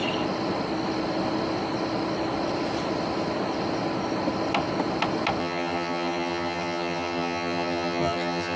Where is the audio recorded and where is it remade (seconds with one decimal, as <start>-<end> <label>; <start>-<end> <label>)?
0.0-5.4 recorded; 5.4-8.6 remade